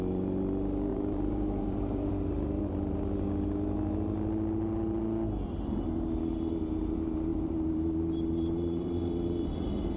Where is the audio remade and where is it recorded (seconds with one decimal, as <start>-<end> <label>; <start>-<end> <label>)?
0.0-0.9 recorded; 0.9-2.1 remade; 2.1-7.3 recorded; 7.3-9.0 remade; 9.0-10.0 recorded